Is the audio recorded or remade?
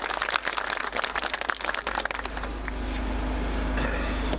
recorded